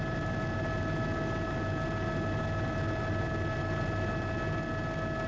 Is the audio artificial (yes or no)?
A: no